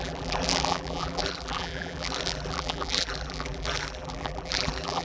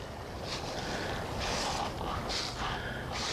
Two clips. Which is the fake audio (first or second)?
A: first